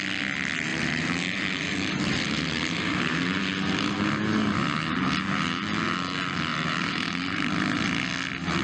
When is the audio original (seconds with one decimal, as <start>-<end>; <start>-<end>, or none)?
0.0-0.7; 4.1-6.5; 7.5-8.6